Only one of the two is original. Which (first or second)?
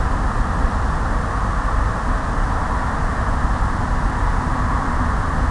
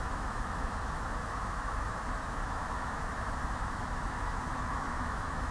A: first